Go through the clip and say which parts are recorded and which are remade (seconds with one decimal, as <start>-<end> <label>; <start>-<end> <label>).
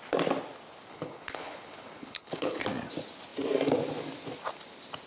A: 0.0-0.9 recorded; 0.9-2.6 remade; 2.6-5.1 recorded